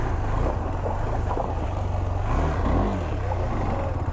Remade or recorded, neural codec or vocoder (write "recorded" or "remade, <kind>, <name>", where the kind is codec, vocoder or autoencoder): recorded